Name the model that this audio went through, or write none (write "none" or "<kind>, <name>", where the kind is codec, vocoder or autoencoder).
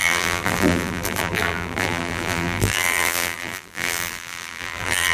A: vocoder, BigVGAN v2